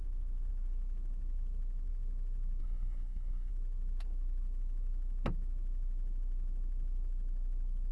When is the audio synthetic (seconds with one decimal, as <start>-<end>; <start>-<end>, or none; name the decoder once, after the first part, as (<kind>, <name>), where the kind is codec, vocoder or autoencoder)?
2.6-3.5 (codec, SNAC)